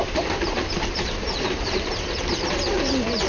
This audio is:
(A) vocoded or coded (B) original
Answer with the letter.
A